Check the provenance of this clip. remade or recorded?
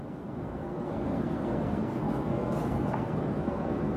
remade